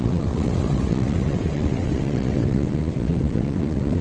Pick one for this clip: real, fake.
fake